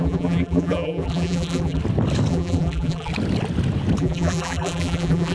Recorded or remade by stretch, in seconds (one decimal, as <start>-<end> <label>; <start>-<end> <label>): 0.0-1.8 remade; 1.8-2.3 recorded; 2.3-3.1 remade; 3.1-4.0 recorded; 4.0-5.3 remade